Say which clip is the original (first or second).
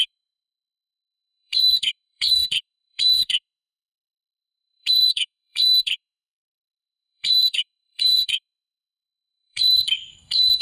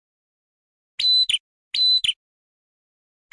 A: second